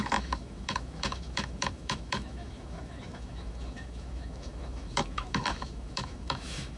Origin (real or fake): fake